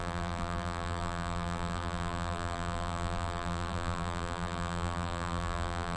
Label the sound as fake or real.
fake